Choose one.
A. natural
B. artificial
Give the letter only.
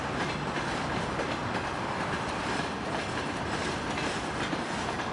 A